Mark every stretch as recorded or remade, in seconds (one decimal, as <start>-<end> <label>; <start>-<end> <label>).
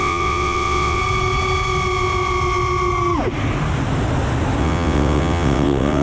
0.0-1.0 remade; 1.0-4.6 recorded; 4.6-6.0 remade